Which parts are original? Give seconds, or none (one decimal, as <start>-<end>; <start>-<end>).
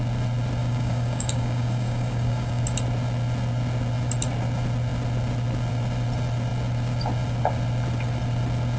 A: 0.0-0.6; 2.6-8.8